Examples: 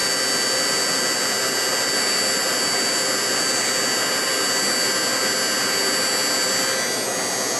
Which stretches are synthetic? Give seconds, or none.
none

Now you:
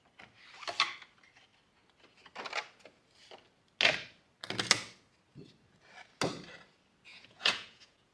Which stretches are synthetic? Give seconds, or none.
7.1-8.1 (vocoder, Vocos)

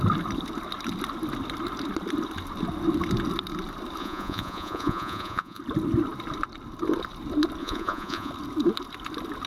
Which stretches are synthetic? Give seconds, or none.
4.0-5.6 (vocoder, Vocos); 7.6-8.3

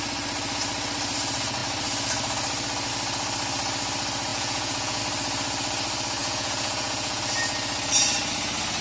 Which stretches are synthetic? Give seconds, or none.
4.3-5.0 (vocoder, Vocos); 6.2-7.2

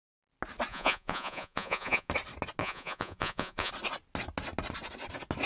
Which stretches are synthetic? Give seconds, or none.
0.7-2.1 (vocoder, Vocos); 2.6-3.7

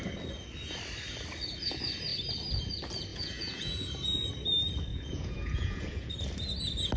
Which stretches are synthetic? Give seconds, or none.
3.1-4.3 (vocoder, Vocos); 4.9-6.1

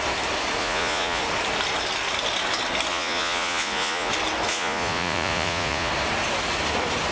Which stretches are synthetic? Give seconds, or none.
0.6-1.2 (vocoder, Vocos); 2.9-4.1; 4.5-5.9